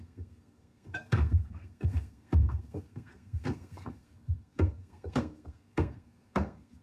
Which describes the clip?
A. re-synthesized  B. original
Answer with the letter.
A